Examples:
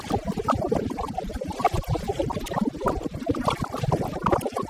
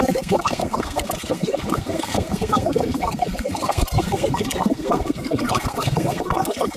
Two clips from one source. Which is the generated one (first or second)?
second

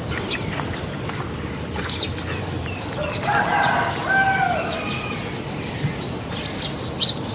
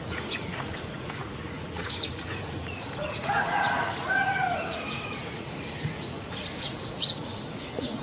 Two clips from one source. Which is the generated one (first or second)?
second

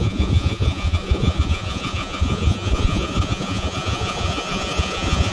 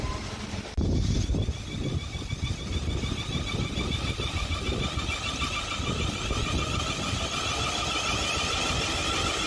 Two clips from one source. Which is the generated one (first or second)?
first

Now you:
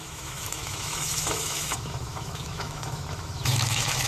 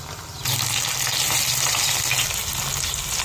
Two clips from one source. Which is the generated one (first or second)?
first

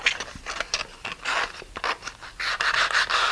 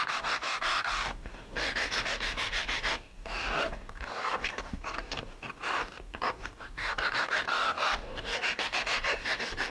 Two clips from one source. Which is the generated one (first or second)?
second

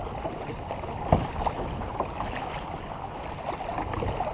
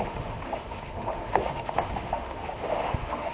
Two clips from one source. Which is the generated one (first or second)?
second